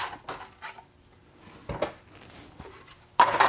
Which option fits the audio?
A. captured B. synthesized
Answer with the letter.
A